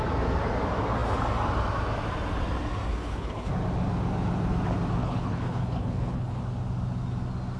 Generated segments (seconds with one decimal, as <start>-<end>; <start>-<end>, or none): 2.9-3.5; 5.0-6.4